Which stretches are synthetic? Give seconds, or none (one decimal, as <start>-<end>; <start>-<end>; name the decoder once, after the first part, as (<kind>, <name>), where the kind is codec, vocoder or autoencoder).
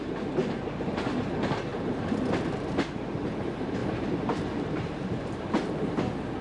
1.7-3.1 (vocoder, BigVGAN v2); 3.8-5.9